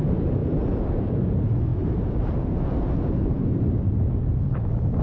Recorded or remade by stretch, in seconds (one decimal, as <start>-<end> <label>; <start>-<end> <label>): 0.0-5.0 remade